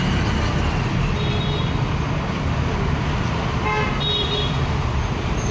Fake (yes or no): no